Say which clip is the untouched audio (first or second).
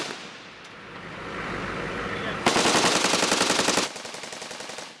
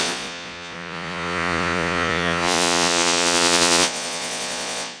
first